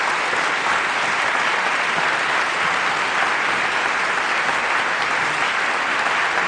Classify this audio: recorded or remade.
recorded